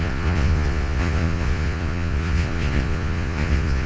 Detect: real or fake fake